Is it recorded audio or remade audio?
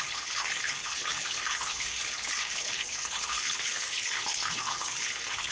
remade